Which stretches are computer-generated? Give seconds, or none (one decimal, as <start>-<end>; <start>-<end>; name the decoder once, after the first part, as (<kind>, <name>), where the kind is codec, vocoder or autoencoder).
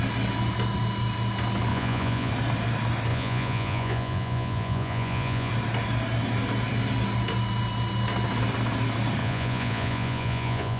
1.7-2.3 (vocoder, Vocos); 3.1-5.5; 9.2-10.8